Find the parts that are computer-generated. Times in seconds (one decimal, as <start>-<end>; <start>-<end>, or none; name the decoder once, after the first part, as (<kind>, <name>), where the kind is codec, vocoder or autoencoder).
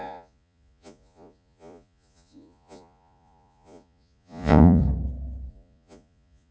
0.0-4.8 (vocoder, Vocos); 5.5-6.5